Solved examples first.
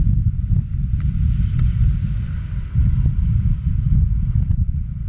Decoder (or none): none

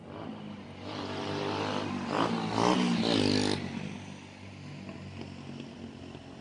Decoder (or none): none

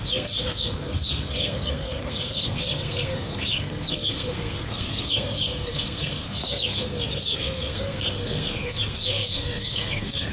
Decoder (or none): codec, SNAC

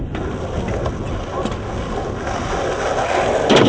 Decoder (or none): none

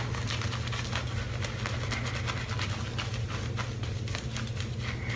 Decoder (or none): none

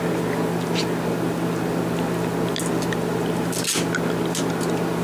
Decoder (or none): none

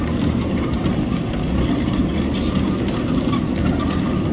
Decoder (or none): none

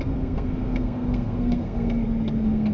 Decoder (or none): codec, SNAC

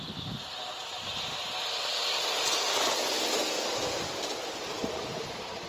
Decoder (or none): none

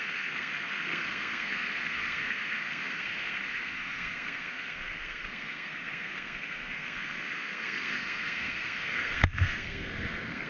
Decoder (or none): codec, SNAC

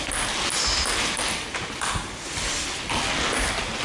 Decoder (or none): none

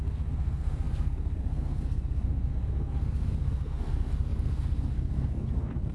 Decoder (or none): codec, SNAC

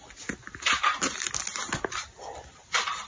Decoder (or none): none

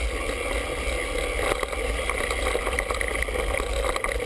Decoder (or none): none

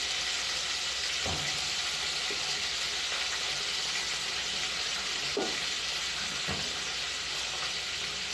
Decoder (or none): none